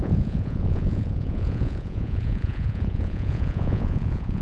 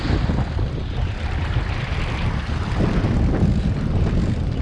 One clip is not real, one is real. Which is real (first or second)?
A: second